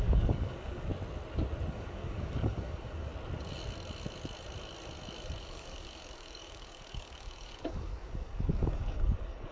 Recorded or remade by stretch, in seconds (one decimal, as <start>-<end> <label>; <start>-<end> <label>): 0.0-0.9 remade; 0.9-1.7 recorded; 1.7-3.1 remade; 3.1-5.4 recorded; 5.4-9.5 remade